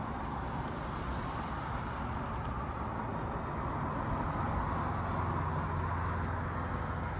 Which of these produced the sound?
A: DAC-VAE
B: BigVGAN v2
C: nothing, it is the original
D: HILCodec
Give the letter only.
C